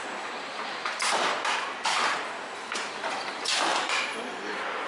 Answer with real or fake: fake